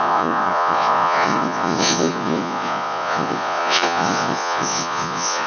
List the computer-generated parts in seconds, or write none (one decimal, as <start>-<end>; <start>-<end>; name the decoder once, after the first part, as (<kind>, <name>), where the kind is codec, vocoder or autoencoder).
0.0-5.5 (vocoder, Vocos)